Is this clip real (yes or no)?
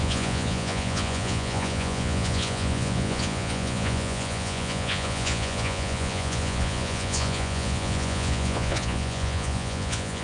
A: no